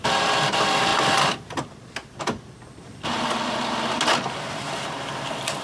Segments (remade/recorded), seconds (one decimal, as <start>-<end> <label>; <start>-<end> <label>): 0.0-0.9 remade; 0.9-4.3 recorded; 4.3-5.6 remade